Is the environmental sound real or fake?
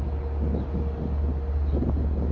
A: real